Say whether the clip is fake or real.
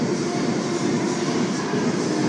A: real